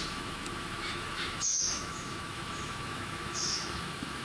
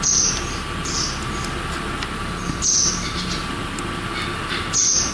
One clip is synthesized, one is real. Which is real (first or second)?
second